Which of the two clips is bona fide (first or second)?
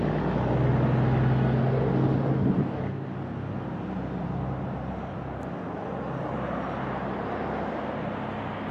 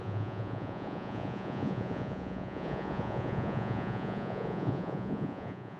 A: first